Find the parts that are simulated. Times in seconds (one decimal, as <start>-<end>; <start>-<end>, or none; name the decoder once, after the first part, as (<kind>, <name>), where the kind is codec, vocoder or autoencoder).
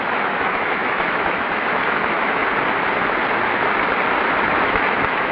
0.0-2.4 (autoencoder, DAC-VAE); 4.5-5.3